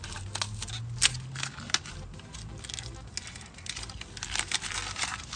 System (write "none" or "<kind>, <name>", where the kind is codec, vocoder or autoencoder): none